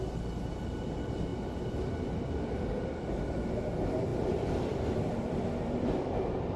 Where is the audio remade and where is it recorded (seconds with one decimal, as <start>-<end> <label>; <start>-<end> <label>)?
0.0-6.6 recorded